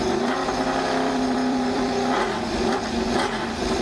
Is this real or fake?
fake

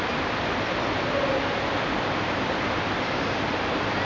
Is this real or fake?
fake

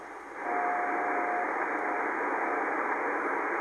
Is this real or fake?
real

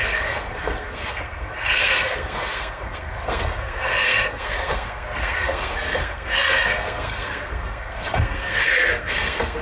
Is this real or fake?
fake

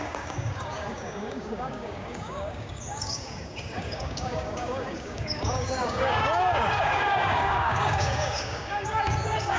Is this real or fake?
fake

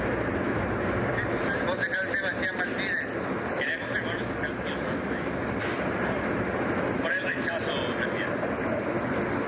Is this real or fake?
real